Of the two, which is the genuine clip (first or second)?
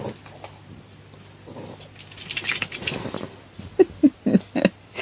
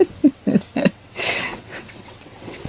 first